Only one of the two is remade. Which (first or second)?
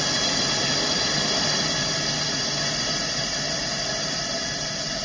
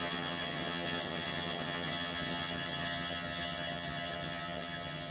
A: second